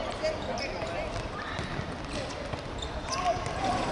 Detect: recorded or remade recorded